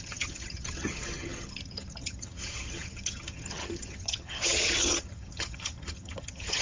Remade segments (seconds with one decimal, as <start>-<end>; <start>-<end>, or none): 0.0-6.6